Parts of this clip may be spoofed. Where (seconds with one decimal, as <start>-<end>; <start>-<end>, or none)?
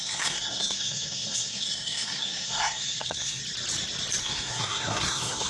0.0-3.4; 4.2-5.5